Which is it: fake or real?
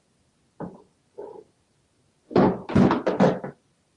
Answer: real